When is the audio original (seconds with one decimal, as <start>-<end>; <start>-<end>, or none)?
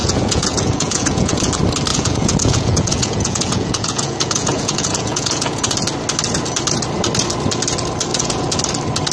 1.5-1.9; 5.7-8.1; 8.6-9.1